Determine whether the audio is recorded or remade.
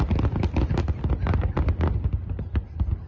recorded